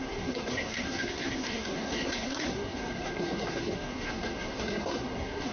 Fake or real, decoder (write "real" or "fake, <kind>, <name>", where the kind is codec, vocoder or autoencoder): fake, codec, SNAC